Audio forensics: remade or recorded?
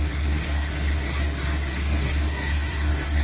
remade